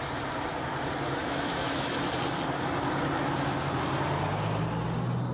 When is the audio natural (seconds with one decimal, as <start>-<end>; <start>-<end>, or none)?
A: 0.0-1.2; 1.9-5.3